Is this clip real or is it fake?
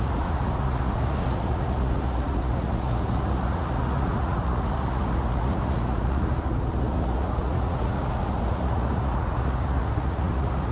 fake